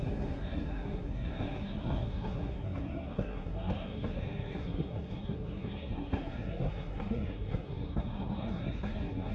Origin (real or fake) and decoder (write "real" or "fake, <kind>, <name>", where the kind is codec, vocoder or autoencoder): fake, codec, SNAC